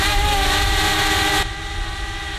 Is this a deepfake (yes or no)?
yes